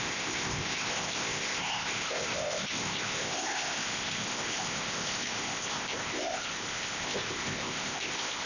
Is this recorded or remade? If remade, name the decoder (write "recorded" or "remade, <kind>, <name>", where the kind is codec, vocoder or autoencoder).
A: remade, codec, ZipCodec